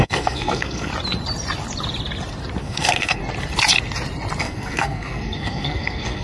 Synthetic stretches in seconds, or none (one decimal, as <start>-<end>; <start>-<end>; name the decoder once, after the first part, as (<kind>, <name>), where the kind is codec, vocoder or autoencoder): 0.0-0.9 (codec, SNAC); 2.6-3.2; 4.4-6.2